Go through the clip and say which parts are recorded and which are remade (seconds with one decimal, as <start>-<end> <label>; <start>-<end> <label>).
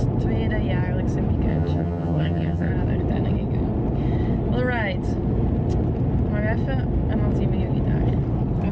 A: 0.0-1.5 recorded; 1.5-2.7 remade; 2.7-8.7 recorded